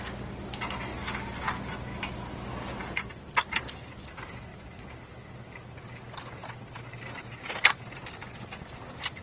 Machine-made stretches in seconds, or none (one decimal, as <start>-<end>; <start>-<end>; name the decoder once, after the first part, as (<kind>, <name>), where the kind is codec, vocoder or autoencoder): 8.2-8.7 (vocoder, Vocos)

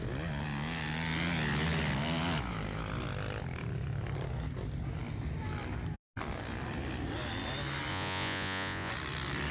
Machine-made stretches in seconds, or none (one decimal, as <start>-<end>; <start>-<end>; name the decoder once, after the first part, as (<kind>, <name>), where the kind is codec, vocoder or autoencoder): 7.9-8.9 (vocoder, Vocos)

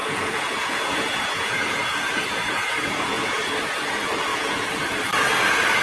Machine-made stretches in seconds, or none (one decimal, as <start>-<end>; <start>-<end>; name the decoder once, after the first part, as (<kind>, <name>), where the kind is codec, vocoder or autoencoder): 0.0-3.5 (vocoder, Vocos); 4.3-5.0

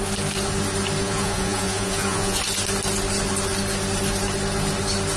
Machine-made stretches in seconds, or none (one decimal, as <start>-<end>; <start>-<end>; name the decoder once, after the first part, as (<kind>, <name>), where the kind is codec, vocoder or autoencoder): 1.0-2.4 (vocoder, Vocos)